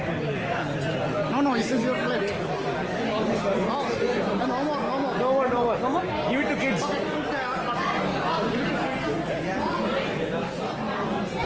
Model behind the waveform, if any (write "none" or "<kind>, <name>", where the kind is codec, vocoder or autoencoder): none